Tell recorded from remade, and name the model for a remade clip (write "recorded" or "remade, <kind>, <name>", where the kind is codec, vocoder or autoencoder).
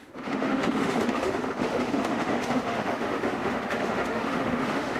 remade, autoencoder, DAC-VAE